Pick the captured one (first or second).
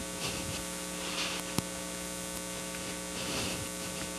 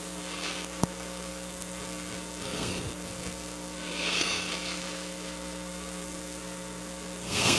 first